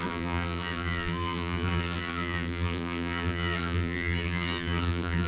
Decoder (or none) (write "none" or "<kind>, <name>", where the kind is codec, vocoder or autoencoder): vocoder, BigVGAN v2